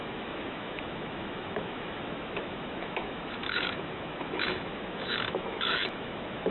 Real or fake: fake